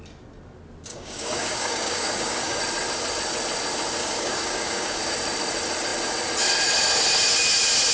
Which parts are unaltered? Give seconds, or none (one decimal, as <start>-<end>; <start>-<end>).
0.0-0.9; 2.6-4.0; 5.0-7.9

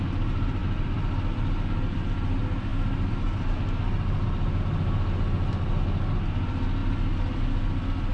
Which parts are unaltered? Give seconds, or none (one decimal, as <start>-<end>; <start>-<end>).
0.0-8.1

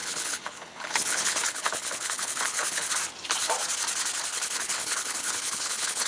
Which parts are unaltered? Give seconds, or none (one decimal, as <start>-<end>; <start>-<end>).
2.9-4.3